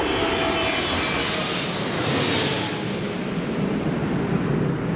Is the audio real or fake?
real